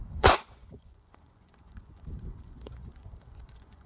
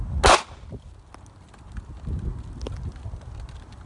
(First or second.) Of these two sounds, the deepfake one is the first